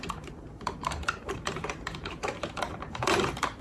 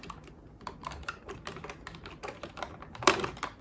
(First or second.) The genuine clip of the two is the second